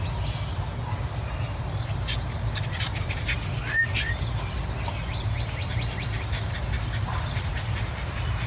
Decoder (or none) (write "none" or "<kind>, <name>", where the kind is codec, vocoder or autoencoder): none